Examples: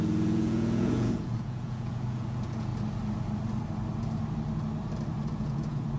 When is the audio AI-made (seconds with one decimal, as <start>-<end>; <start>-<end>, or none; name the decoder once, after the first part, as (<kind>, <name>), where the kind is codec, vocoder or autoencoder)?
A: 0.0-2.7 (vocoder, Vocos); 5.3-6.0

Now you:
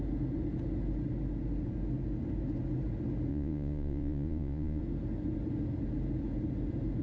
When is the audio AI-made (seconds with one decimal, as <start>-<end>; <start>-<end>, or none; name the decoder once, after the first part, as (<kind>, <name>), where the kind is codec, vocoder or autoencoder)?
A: 3.3-4.8 (vocoder, Vocos)

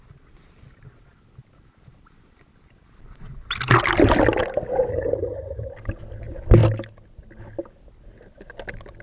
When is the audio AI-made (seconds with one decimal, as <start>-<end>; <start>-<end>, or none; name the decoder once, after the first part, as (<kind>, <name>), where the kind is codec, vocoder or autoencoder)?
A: 4.9-5.7 (vocoder, HiFi-GAN)

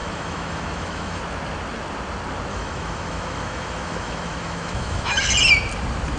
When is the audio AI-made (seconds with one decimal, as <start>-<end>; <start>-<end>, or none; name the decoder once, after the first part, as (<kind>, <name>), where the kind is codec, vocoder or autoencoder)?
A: 0.0-1.2 (autoencoder, DAC-VAE); 2.5-5.2

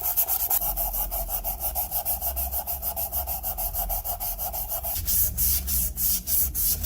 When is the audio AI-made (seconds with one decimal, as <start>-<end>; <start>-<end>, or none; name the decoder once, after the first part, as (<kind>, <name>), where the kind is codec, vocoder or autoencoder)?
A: 4.3-6.5 (vocoder, BigVGAN v2)

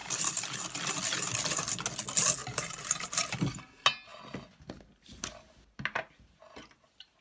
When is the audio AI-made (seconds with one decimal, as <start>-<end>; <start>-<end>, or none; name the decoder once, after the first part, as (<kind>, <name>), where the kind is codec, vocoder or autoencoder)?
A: 2.4-3.5 (vocoder, BigVGAN v2)

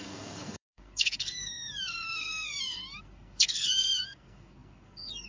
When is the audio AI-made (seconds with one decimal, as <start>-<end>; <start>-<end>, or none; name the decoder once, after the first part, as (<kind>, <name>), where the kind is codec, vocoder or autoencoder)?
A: 0.0-5.3 (codec, SNAC)

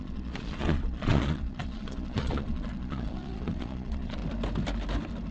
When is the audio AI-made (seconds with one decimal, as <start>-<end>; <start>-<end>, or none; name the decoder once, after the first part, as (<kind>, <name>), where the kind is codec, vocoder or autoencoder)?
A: 0.0-4.2 (vocoder, Vocos)